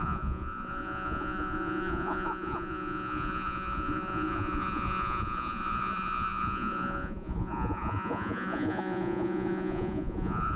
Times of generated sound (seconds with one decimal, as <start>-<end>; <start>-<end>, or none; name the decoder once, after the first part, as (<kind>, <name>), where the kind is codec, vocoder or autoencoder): 0.0-10.6 (vocoder, Vocos)

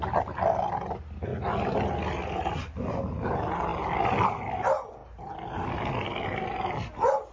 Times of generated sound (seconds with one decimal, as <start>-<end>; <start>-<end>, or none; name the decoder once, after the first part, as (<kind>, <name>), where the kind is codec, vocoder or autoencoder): none

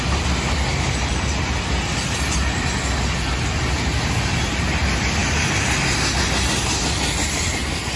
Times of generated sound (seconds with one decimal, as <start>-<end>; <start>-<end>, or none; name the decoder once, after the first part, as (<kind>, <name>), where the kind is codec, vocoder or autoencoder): none

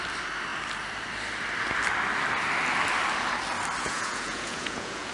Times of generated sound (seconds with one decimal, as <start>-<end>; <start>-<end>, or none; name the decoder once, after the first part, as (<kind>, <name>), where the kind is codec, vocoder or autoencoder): 3.8-5.1 (vocoder, Vocos)

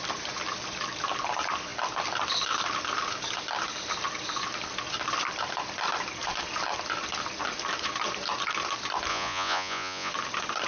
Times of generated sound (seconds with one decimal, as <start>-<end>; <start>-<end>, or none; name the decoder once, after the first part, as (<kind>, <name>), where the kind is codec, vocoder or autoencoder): 9.1-10.1 (vocoder, Vocos)

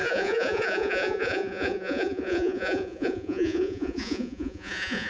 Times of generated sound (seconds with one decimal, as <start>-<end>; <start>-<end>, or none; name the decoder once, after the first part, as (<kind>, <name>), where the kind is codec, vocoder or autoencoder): 0.0-5.1 (vocoder, Vocos)

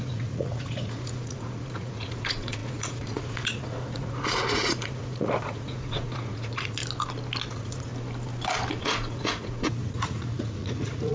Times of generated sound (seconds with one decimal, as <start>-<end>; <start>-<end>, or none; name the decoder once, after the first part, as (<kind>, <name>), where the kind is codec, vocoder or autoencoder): 0.0-6.8 (vocoder, Vocos); 7.5-7.9; 8.8-11.1